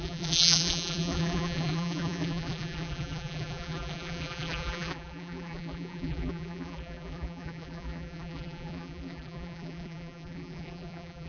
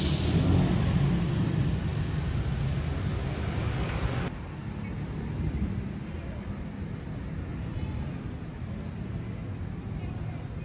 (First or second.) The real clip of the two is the second